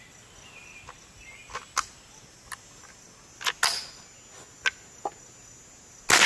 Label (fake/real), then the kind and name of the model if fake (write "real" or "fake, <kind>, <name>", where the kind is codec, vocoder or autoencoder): real